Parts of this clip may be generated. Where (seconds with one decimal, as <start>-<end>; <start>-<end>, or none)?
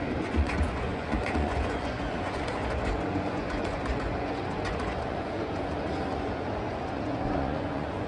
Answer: 0.0-8.1